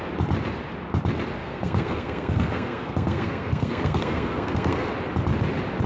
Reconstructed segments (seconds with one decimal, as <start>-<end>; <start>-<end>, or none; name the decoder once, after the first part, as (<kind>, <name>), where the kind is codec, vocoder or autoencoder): 1.4-4.9 (codec, SNAC)